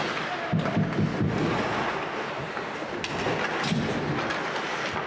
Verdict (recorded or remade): recorded